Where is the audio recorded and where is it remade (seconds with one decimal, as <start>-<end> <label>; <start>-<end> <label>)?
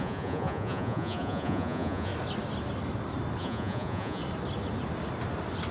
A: 0.0-2.1 remade; 2.1-3.4 recorded; 3.4-4.2 remade; 4.2-5.7 recorded